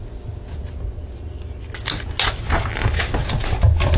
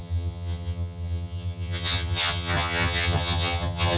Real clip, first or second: first